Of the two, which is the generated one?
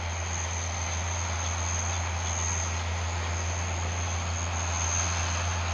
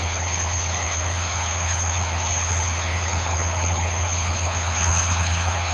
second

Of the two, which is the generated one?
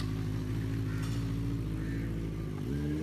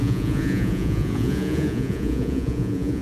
second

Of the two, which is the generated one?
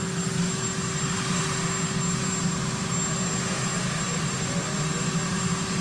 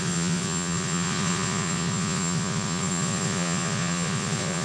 second